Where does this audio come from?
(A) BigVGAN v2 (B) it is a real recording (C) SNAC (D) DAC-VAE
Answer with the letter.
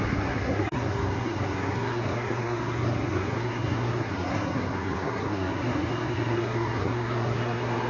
C